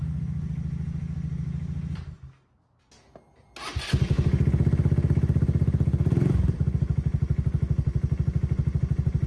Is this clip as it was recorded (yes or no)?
yes